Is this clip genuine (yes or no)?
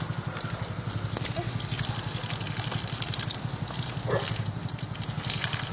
yes